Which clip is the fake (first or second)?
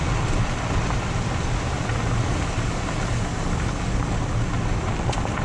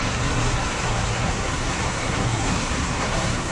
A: second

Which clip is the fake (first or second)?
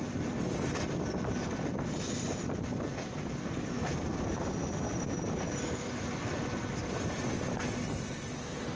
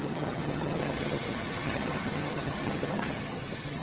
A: second